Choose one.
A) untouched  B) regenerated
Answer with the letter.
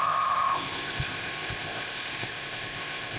B